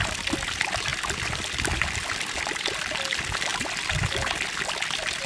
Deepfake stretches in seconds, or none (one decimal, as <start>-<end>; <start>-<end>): none

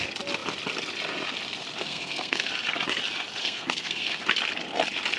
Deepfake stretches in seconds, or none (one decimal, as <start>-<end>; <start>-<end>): 1.8-2.5; 3.4-4.2

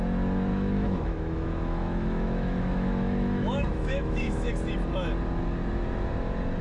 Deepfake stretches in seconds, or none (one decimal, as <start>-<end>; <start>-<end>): 0.5-4.5

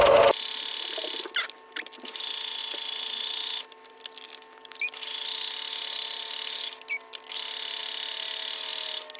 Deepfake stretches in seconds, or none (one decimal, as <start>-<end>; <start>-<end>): none

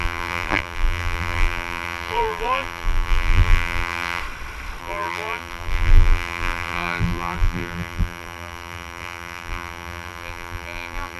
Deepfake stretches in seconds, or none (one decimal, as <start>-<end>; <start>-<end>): 0.0-4.2; 4.8-11.2

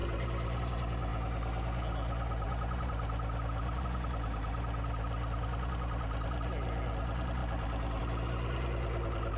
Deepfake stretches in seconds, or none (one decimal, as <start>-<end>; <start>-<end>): none

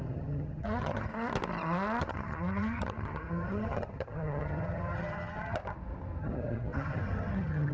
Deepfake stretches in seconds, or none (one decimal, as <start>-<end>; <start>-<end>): 0.0-1.1; 2.0-5.6; 6.2-7.7

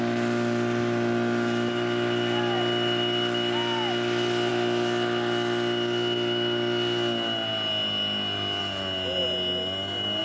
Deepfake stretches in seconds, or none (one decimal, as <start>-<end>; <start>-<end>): none